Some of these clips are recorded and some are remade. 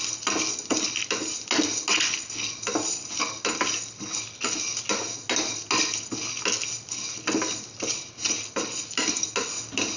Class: recorded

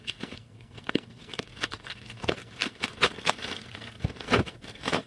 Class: remade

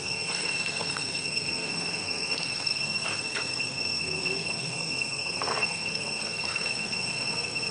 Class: remade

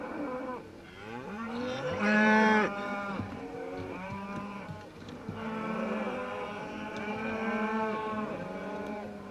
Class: remade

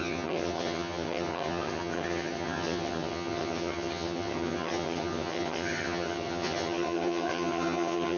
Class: remade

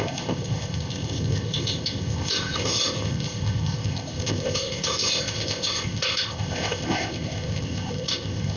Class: remade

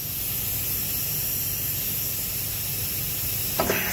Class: recorded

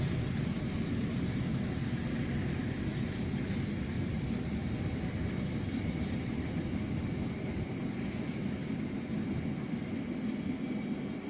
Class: recorded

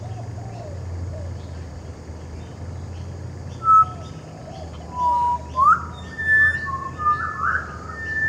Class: recorded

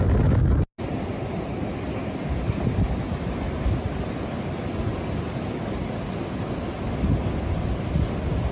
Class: recorded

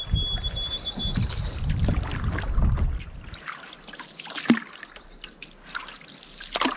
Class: recorded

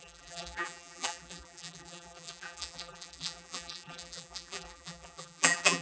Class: remade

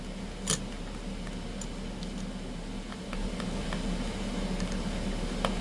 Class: recorded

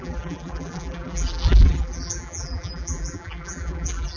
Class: remade